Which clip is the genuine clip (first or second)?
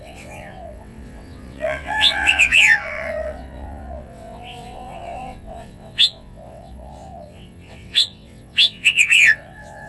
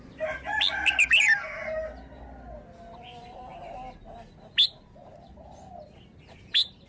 second